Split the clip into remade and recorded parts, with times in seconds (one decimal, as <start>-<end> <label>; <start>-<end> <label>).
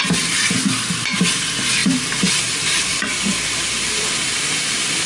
0.0-1.8 recorded; 1.8-5.1 remade